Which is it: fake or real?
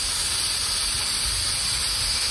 real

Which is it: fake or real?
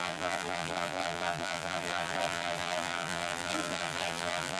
fake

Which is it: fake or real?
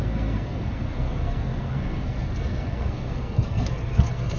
fake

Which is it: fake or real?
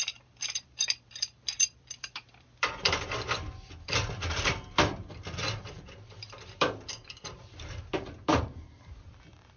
fake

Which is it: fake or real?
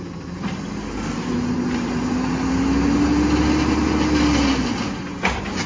real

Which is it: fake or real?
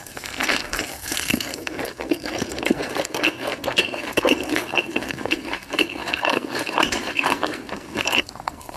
fake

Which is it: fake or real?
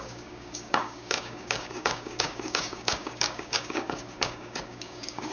fake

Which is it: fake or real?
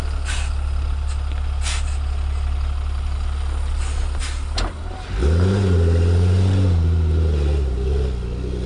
real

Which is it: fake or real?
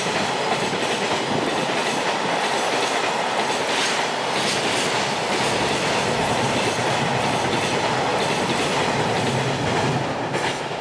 real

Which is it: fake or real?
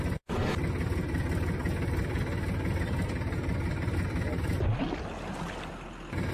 real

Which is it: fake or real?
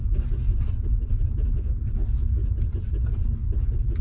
real